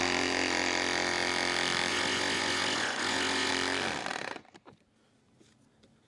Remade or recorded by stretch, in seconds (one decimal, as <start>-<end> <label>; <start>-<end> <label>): 0.0-1.9 recorded; 1.9-3.5 remade; 3.5-6.1 recorded